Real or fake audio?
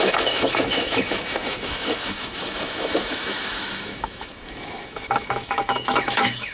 fake